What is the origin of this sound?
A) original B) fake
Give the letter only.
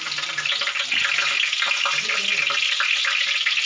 A